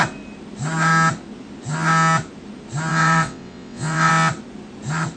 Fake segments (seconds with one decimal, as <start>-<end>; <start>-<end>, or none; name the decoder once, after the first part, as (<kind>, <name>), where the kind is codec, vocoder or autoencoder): 2.9-4.1 (vocoder, WaveNeXt)